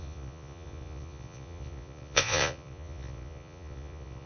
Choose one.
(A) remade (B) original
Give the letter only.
A